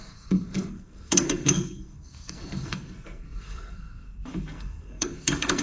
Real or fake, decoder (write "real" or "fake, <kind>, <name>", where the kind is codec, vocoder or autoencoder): fake, codec, SNAC